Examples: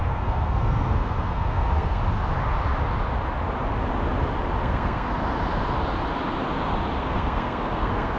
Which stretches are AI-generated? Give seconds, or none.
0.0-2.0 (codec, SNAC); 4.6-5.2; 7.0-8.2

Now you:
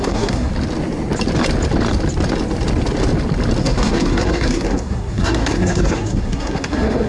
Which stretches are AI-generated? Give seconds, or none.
0.0-0.5 (codec, SNAC); 3.6-7.1

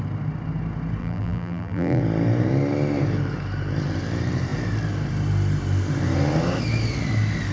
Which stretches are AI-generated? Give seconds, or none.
1.0-2.0 (vocoder, BigVGAN v2)